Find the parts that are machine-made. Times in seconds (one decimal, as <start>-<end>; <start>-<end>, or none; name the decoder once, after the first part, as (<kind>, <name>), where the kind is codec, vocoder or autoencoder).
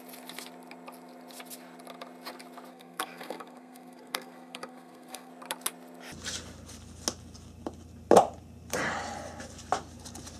2.7-5.3 (codec, SNAC)